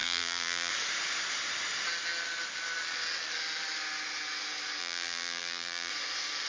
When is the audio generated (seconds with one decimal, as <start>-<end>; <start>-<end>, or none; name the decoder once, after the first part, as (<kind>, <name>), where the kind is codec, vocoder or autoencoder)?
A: 0.0-0.7 (vocoder, BigVGAN v2); 4.8-5.9